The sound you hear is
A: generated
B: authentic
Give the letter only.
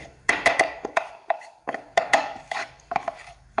A